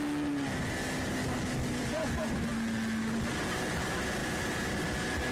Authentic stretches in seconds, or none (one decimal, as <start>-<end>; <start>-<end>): 0.0-1.8; 2.5-5.3